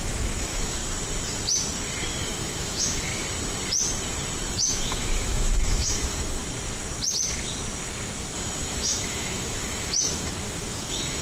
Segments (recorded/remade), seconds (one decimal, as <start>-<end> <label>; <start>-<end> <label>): 0.0-0.8 remade; 0.8-2.2 recorded; 2.2-3.1 remade; 3.1-4.5 recorded; 4.5-6.4 remade; 6.4-8.7 recorded; 8.7-11.2 remade